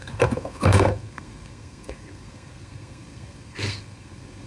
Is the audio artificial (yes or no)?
yes